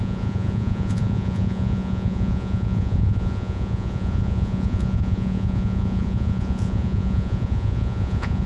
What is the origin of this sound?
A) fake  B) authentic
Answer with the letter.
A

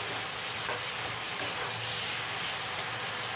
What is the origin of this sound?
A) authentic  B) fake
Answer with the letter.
A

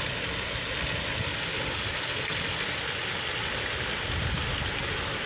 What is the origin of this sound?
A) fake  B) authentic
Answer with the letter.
B